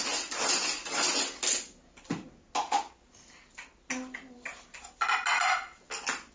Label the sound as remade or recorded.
recorded